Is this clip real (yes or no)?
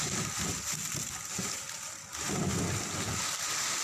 yes